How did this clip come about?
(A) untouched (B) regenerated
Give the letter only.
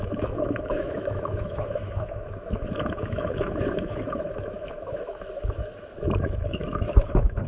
B